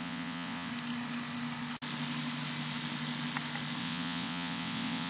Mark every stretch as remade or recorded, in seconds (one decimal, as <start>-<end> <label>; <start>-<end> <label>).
0.0-0.7 remade; 0.7-3.8 recorded; 3.8-5.1 remade